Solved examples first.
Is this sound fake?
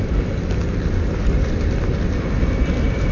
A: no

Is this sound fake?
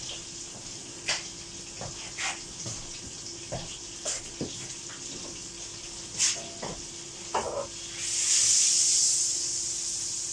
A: no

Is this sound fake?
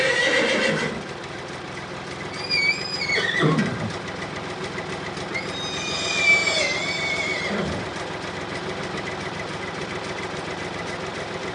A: no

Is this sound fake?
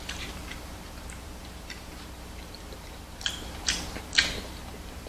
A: yes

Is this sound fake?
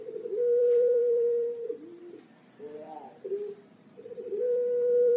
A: yes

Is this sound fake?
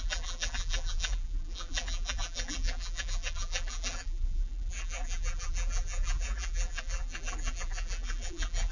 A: yes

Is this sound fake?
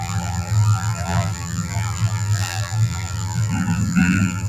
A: yes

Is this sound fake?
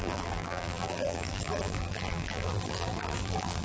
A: yes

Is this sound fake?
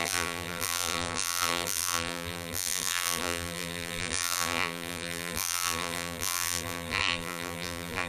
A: yes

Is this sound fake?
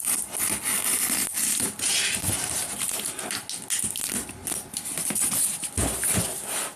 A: no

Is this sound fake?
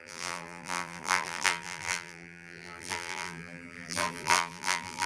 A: yes